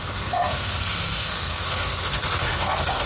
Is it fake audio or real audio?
fake